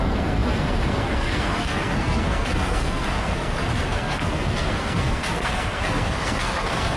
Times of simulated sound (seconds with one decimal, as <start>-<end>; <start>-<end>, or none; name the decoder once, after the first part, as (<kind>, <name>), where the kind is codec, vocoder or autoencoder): 0.0-7.0 (codec, SNAC)